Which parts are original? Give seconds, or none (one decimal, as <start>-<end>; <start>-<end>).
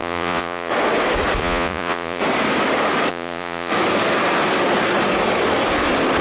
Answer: 0.7-1.4; 2.2-3.1; 3.7-6.2